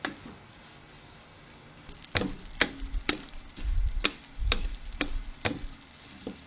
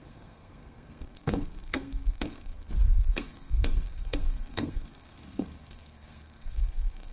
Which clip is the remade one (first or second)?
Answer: second